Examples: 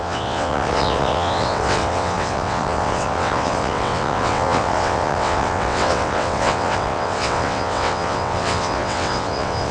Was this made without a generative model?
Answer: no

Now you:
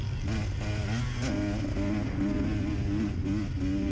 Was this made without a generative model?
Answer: yes